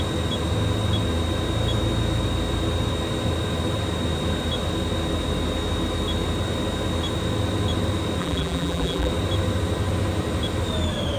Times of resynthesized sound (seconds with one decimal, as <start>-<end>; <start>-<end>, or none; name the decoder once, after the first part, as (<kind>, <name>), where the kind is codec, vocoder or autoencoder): 8.2-9.1 (vocoder, BigVGAN v2)